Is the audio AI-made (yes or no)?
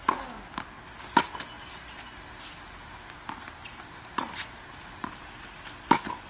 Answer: no